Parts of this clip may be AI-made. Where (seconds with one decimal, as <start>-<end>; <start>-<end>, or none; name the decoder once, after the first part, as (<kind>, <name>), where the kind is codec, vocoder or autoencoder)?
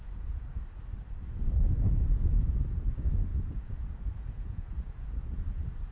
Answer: 0.0-0.9 (vocoder, Vocos); 1.8-5.9